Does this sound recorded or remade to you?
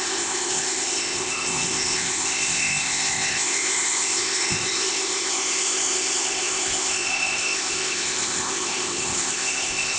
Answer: remade